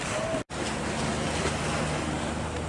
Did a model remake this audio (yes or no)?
no